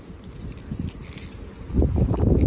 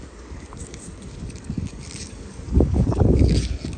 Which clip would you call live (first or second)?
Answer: first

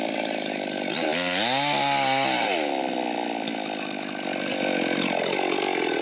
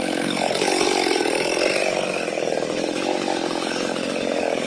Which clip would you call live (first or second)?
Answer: first